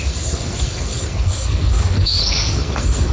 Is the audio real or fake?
fake